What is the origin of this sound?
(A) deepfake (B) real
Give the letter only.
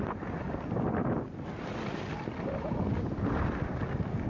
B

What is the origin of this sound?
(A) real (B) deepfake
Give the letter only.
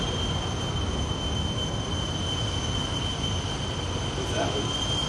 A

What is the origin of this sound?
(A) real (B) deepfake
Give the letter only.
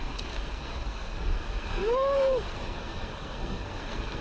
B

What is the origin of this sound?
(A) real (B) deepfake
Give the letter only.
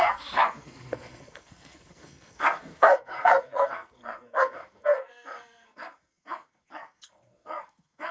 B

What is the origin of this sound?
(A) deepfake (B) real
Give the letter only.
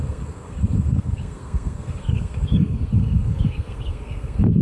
A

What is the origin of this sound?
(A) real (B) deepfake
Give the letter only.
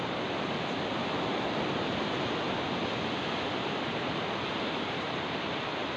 A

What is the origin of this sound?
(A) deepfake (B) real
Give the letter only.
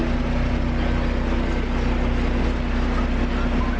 B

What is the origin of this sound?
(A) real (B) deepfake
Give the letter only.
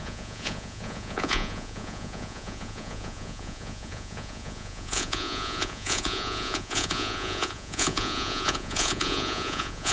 B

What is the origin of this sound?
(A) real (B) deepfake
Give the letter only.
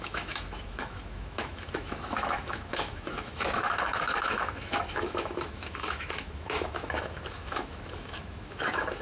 B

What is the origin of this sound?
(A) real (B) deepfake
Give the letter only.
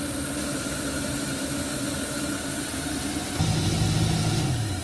A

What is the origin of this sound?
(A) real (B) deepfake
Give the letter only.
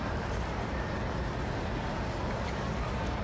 A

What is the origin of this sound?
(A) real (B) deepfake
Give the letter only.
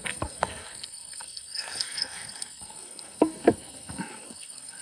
B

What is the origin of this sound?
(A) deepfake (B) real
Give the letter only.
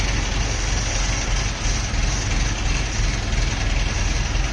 B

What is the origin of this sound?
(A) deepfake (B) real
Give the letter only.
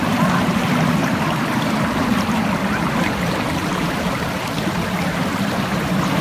A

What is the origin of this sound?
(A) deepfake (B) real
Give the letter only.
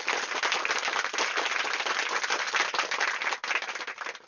B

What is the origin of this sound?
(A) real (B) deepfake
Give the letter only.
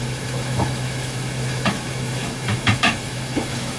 B